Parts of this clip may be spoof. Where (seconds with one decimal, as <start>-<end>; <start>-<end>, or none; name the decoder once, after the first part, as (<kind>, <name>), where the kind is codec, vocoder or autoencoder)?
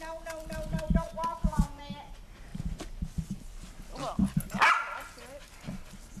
1.3-1.8 (vocoder, Vocos)